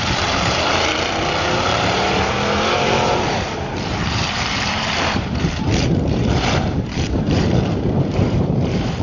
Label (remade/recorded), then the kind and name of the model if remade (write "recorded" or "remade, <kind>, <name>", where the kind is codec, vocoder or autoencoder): remade, vocoder, BigVGAN v2